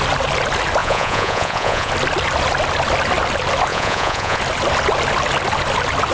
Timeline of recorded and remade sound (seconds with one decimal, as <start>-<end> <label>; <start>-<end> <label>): 0.0-0.8 recorded; 0.8-1.9 remade; 1.9-3.7 recorded; 3.7-4.4 remade; 4.4-6.1 recorded